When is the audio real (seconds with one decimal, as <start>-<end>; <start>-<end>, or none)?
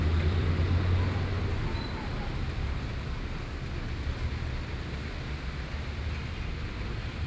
0.6-7.3